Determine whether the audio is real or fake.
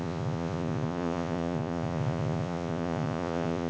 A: fake